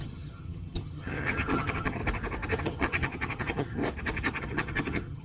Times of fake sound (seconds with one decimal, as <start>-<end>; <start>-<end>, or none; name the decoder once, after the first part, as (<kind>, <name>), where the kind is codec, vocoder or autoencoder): 0.0-2.0 (vocoder, HiFi-GAN); 2.6-3.8; 4.4-5.2

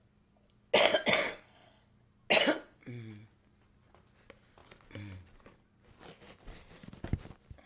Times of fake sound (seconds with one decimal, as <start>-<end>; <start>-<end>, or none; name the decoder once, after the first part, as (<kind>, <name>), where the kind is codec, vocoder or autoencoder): 1.3-1.8 (codec, SNAC)

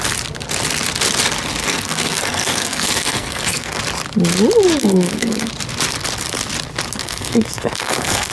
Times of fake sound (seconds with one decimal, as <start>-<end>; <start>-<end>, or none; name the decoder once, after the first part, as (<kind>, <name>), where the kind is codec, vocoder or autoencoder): 1.6-3.8 (codec, SNAC); 4.8-5.5; 7.0-8.3

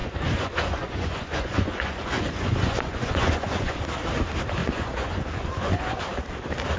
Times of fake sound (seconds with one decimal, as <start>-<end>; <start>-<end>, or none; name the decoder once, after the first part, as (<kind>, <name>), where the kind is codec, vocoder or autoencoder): 0.0-3.8 (vocoder, Vocos); 4.6-6.0

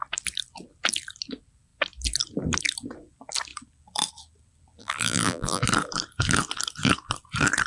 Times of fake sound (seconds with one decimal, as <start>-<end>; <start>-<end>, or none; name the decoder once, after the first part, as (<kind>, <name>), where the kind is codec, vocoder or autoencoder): 4.8-5.6 (vocoder, BigVGAN v2)

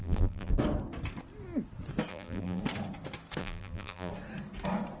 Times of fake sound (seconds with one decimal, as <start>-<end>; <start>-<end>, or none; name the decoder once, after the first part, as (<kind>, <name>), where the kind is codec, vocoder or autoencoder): 0.0-0.5 (vocoder, BigVGAN v2); 2.1-2.6; 3.4-4.1

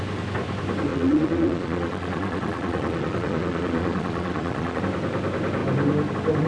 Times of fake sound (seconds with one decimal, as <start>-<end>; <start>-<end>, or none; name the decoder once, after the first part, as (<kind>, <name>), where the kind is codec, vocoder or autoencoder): 0.9-4.8 (vocoder, Vocos)

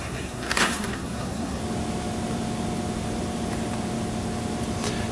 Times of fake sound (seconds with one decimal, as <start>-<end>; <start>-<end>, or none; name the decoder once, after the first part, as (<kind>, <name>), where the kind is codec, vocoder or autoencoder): 0.0-1.6 (codec, SNAC)